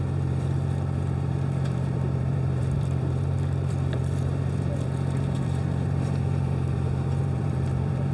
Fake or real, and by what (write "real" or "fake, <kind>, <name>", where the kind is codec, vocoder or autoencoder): fake, vocoder, BigVGAN v2